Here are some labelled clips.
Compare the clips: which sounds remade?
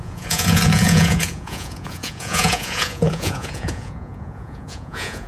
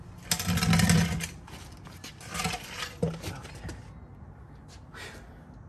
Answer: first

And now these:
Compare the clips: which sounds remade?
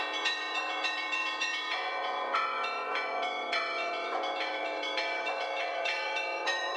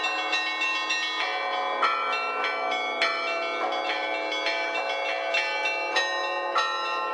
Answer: first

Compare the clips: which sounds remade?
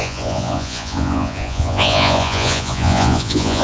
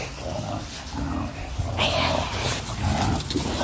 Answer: first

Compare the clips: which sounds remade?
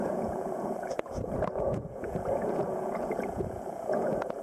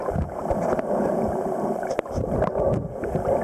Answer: first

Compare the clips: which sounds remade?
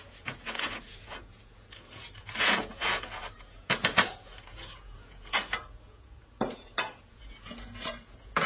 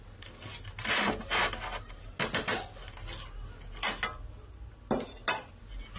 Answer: first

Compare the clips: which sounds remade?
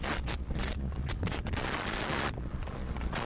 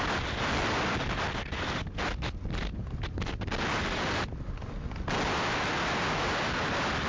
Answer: first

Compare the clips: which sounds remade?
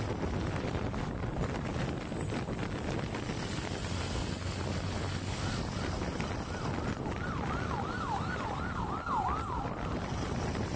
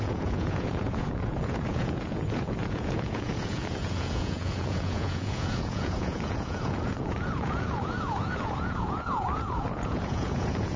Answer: second